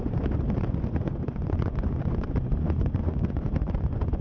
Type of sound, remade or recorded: remade